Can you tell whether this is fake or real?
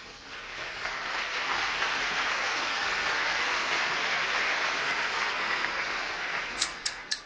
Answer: fake